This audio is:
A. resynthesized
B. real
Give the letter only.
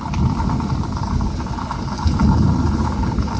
B